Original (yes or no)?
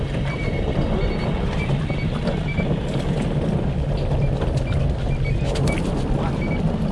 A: yes